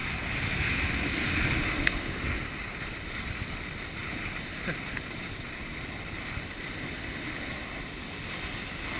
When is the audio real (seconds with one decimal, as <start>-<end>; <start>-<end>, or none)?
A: 0.0-9.0